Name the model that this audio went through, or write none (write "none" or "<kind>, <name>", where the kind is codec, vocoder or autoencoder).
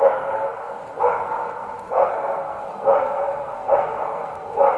codec, SNAC